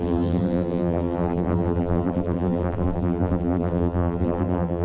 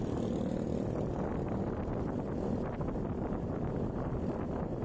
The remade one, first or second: first